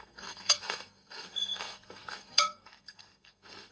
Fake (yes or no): yes